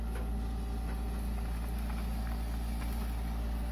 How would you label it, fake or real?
real